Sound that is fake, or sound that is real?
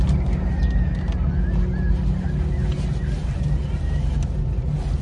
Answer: real